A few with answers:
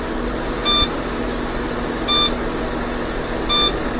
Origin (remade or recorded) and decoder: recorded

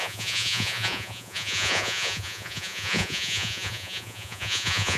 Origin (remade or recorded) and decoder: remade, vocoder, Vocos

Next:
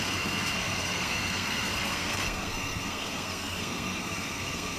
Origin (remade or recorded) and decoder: remade, codec, SNAC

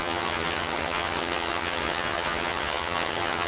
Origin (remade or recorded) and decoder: remade, vocoder, HiFi-GAN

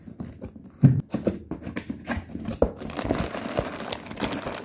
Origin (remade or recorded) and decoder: recorded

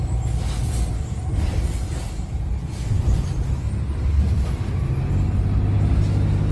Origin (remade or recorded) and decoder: recorded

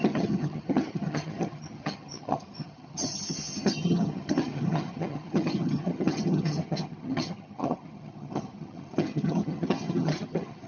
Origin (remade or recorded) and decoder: remade, vocoder, HiFi-GAN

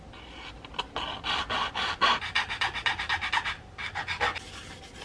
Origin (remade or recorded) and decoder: recorded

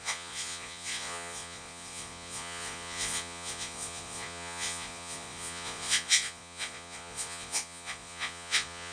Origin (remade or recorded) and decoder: remade, vocoder, Vocos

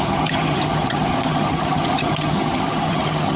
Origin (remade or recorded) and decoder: remade, vocoder, HiFi-GAN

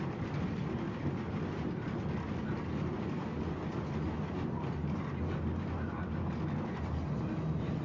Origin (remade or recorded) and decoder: recorded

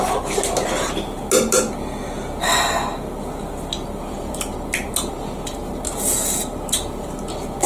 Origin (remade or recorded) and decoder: recorded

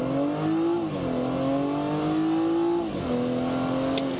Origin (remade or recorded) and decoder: recorded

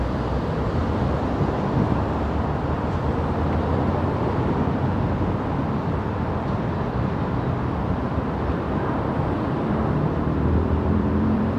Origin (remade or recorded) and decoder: remade, vocoder, BigVGAN v2